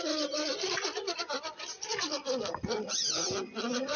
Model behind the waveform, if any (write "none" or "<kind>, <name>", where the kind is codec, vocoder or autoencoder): none